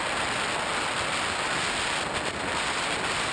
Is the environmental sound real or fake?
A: real